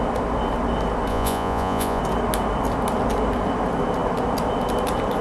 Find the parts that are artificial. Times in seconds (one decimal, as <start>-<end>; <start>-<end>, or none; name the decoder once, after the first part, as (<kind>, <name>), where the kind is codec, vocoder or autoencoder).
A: 1.1-2.0 (vocoder, Vocos)